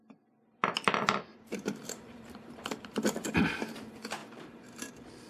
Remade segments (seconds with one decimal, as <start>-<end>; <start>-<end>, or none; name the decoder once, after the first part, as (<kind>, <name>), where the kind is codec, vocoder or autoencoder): 1.3-3.4 (vocoder, BigVGAN v2); 4.2-5.3